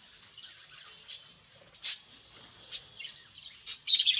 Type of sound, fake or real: real